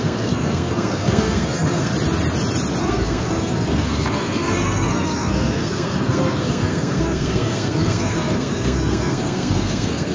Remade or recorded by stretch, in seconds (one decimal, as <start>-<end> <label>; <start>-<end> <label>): 0.0-1.9 remade; 1.9-2.8 recorded; 2.8-10.1 remade